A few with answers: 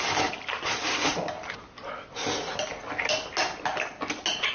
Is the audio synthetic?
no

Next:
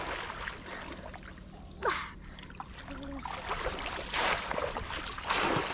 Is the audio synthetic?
no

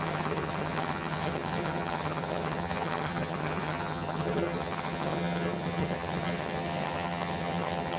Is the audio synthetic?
yes